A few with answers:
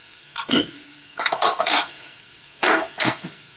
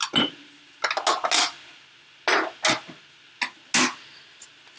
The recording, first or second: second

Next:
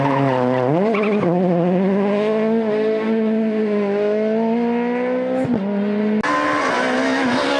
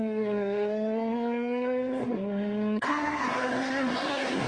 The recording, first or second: first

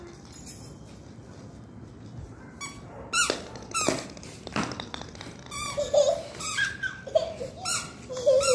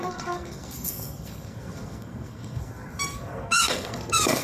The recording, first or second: first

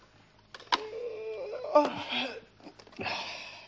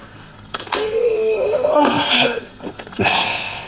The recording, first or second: first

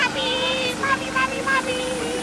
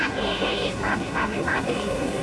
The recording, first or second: first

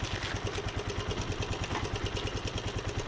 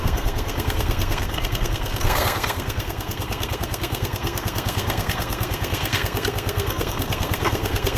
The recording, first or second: first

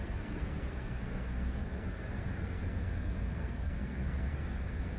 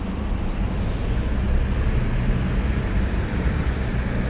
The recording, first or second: second